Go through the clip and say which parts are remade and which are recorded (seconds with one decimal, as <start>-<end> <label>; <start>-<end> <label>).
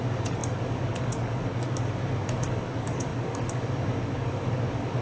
0.0-5.0 remade